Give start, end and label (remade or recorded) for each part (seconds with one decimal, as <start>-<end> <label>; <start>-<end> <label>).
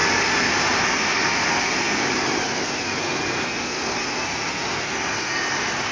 0.0-1.2 remade; 1.2-5.9 recorded